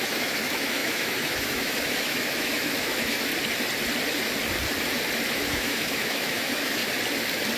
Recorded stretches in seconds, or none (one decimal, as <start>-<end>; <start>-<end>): 3.3-5.3; 6.8-7.6